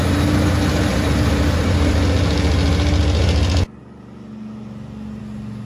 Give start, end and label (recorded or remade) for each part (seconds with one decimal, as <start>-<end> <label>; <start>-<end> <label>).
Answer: 0.0-0.9 recorded; 0.9-1.9 remade; 1.9-5.7 recorded